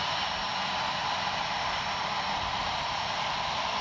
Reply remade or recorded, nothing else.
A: recorded